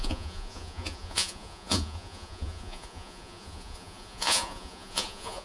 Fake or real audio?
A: fake